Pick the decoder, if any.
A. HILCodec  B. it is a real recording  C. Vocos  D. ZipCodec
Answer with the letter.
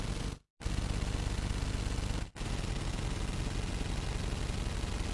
B